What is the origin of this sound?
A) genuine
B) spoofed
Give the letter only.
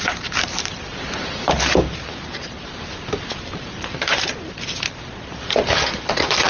B